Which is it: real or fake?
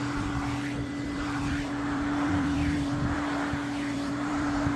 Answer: fake